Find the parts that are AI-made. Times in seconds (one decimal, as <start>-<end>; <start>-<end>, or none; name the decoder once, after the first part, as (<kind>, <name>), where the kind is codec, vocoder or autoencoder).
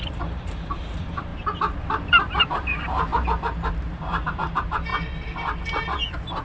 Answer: 0.0-1.3 (vocoder, BigVGAN v2); 2.1-3.1; 3.7-4.9